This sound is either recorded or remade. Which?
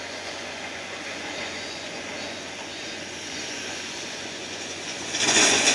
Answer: remade